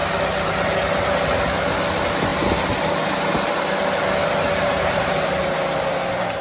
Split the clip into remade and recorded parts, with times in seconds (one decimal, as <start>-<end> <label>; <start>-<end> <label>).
0.0-6.4 recorded